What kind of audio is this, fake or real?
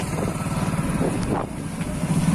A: real